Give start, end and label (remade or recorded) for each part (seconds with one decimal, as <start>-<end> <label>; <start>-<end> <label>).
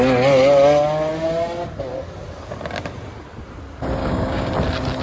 0.0-4.0 recorded; 4.0-4.5 remade; 4.5-5.0 recorded